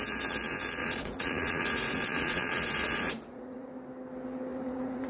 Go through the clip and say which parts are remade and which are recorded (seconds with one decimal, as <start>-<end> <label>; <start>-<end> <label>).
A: 0.0-0.8 recorded; 0.8-3.7 remade; 3.7-4.5 recorded; 4.5-5.1 remade